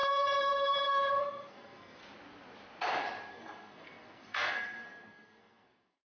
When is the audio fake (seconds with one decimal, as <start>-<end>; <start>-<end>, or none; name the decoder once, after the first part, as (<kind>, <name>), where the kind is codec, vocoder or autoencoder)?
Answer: 0.0-2.0 (codec, SNAC); 3.3-6.1